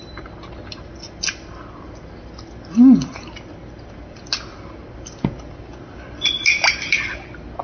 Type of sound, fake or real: real